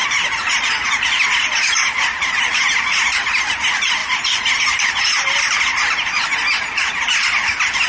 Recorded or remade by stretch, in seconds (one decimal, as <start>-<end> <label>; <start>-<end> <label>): 0.0-4.0 recorded; 4.0-4.9 remade; 4.9-7.9 recorded